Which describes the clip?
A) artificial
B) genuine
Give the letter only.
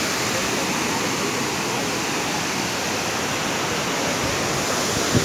B